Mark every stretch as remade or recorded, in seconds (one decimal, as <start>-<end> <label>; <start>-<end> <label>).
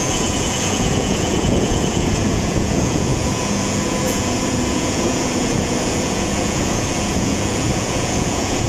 0.0-8.7 remade